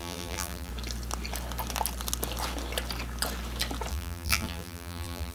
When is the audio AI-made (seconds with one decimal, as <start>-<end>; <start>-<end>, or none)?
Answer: 0.0-0.7; 3.9-5.3